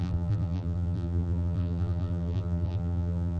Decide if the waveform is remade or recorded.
remade